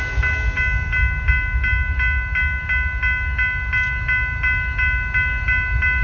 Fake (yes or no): no